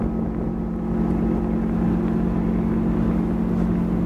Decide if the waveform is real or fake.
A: real